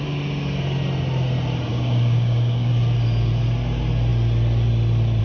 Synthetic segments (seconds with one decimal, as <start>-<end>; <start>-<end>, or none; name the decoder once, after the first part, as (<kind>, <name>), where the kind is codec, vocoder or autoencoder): 1.7-2.7 (codec, DAC)